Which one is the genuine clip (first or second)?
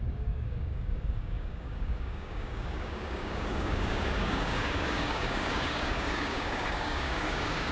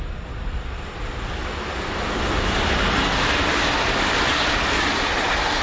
second